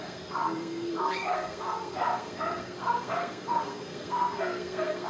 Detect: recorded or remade remade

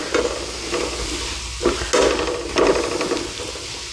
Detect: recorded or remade recorded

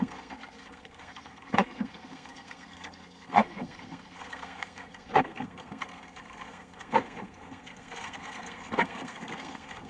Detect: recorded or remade remade